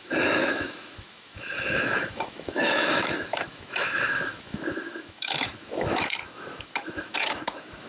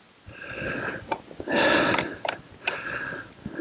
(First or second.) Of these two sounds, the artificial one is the first